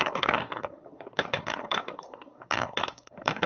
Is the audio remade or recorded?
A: remade